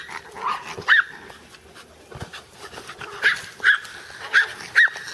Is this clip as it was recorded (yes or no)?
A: yes